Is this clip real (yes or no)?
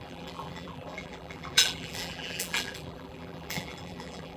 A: no